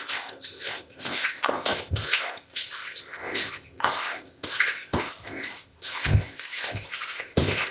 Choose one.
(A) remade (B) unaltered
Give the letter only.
A